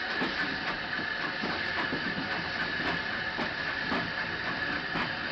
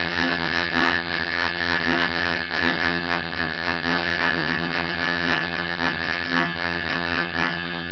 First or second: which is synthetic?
second